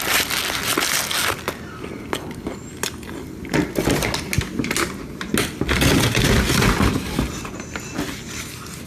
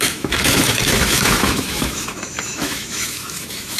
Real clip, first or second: first